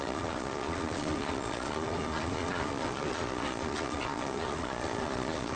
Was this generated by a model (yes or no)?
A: yes